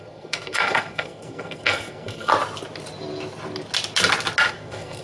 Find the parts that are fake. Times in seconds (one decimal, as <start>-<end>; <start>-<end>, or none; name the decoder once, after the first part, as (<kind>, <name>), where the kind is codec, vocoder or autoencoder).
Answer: 0.0-2.3 (codec, SNAC); 4.5-5.0